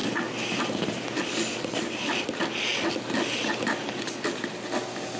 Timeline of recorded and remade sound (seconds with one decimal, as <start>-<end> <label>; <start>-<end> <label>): 0.0-5.2 recorded